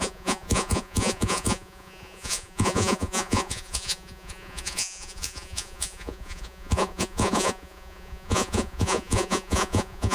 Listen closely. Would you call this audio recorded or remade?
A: remade